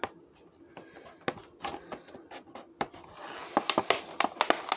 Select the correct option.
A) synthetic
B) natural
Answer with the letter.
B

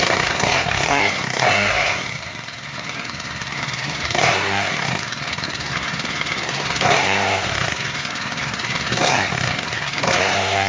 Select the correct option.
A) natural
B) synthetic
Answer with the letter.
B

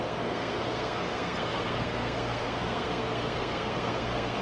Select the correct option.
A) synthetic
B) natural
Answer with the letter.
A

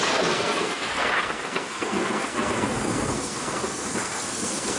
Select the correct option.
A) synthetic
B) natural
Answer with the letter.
A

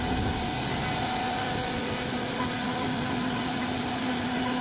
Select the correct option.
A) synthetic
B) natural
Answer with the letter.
B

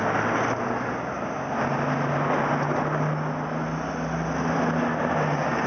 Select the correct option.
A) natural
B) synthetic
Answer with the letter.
A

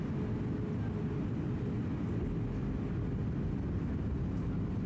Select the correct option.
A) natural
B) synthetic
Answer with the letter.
A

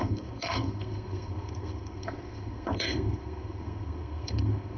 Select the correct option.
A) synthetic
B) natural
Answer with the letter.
A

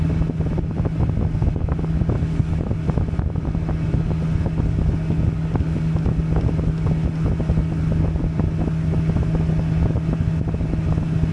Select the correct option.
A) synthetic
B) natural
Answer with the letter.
B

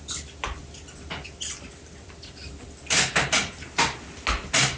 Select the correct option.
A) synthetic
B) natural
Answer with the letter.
B